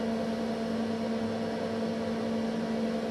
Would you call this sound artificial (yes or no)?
no